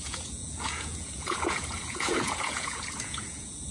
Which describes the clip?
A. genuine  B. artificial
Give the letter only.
B